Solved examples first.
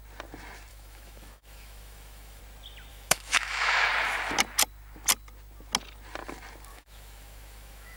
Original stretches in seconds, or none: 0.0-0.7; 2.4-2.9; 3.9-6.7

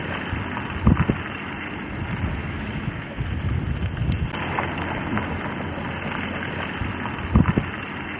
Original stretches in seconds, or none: 0.0-2.4; 3.3-8.2